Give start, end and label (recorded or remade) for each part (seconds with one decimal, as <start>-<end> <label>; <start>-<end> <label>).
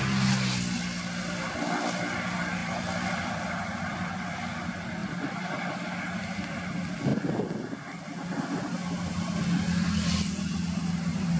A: 0.0-2.6 recorded; 2.6-3.5 remade; 3.5-5.0 recorded; 5.0-5.5 remade; 5.5-11.4 recorded